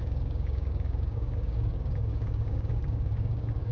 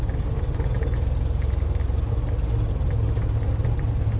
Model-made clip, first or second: first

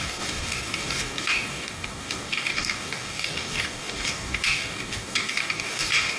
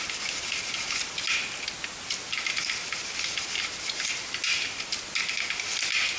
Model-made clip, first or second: first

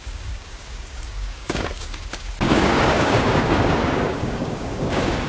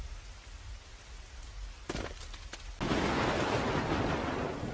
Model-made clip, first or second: first